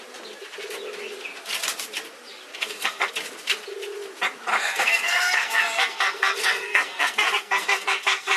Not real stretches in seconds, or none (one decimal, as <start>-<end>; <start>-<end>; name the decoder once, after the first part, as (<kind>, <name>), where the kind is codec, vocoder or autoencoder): 2.5-3.1 (codec, SNAC); 4.5-8.4